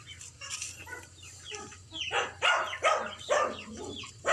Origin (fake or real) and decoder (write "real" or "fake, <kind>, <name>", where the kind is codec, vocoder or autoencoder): real